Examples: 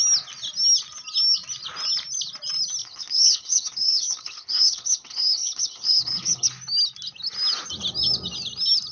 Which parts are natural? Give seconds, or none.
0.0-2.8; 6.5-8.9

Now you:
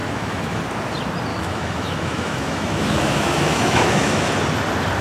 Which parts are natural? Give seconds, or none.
0.6-1.3; 4.3-5.0

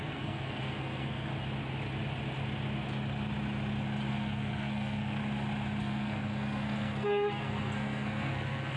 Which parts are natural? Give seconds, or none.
1.3-4.1; 5.2-5.8

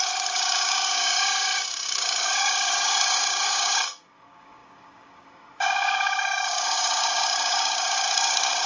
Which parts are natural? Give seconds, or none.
none

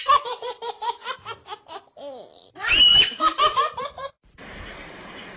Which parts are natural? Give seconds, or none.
1.0-2.5

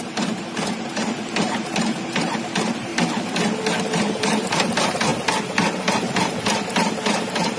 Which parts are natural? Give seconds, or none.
2.9-3.8